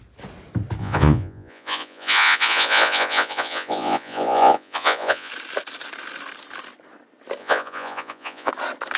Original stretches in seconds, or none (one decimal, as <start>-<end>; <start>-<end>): 0.0-0.8; 5.3-7.4; 8.5-9.0